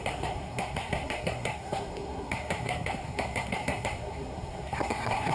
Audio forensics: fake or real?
fake